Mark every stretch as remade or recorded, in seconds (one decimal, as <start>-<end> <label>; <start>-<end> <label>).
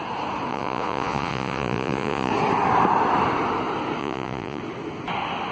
0.0-0.5 recorded; 0.5-2.3 remade; 2.3-4.0 recorded; 4.0-4.6 remade; 4.6-5.5 recorded